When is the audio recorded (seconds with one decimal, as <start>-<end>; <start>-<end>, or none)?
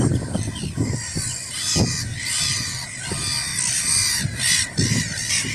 0.0-5.5